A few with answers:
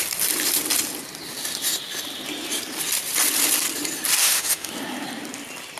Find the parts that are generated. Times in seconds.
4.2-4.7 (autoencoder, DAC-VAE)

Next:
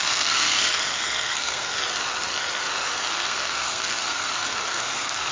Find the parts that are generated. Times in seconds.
0.0-1.8 (codec, SNAC); 3.1-5.3

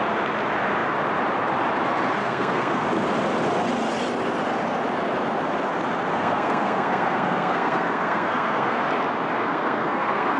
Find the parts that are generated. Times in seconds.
2.2-2.8 (codec, SNAC); 6.1-8.8; 9.4-10.4